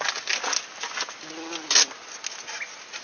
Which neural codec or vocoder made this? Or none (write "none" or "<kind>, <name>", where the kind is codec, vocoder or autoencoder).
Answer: none